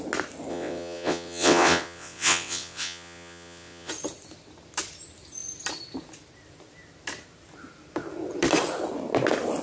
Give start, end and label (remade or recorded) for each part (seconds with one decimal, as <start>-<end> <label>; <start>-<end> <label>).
0.0-0.5 recorded; 0.5-3.9 remade; 3.9-9.6 recorded